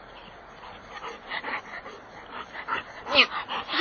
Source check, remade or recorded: recorded